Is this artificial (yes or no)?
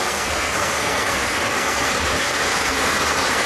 yes